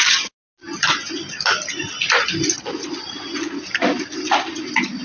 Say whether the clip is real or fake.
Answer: real